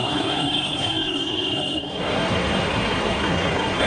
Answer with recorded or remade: remade